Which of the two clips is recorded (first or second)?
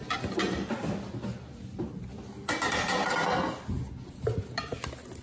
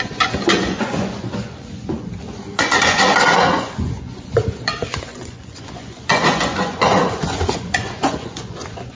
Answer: first